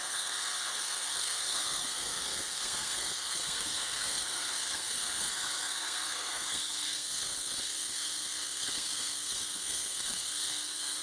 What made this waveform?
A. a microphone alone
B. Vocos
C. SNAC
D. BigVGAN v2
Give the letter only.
C